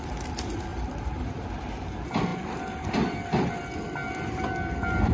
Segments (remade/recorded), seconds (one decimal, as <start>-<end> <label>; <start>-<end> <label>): 0.0-0.7 recorded; 0.7-1.5 remade; 1.5-5.1 recorded